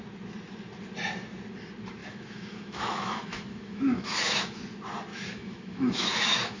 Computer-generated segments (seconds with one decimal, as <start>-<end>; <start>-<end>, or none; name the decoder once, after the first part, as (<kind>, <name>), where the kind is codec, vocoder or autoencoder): 2.0-4.6 (autoencoder, DAC-VAE); 5.1-6.6